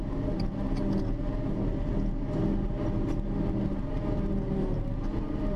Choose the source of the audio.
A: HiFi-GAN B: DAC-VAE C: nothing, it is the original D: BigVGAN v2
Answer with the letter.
C